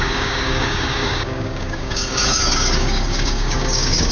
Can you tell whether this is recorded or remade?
remade